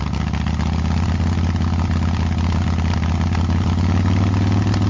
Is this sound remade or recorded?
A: recorded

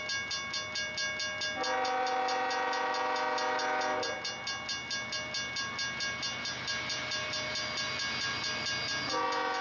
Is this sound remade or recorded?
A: recorded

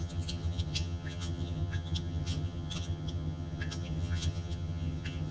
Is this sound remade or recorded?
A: remade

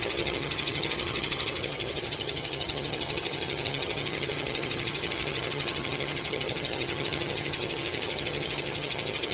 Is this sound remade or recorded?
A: remade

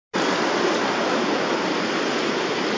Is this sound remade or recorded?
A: recorded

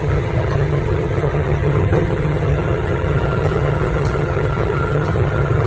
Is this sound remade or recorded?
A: remade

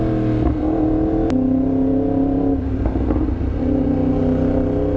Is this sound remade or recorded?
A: recorded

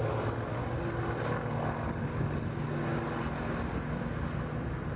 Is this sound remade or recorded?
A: recorded